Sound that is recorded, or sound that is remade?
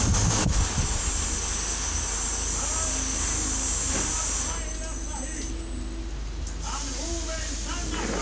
recorded